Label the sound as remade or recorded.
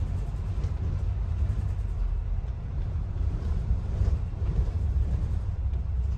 remade